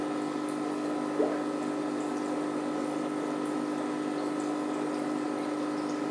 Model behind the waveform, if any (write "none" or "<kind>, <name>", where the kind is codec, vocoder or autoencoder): none